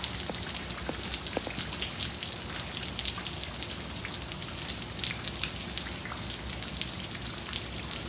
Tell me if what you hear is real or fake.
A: real